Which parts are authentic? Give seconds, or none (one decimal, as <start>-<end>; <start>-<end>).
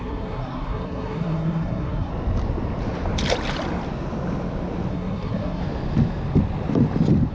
2.1-4.9; 5.6-7.3